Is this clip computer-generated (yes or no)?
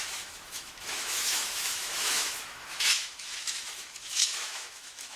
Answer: yes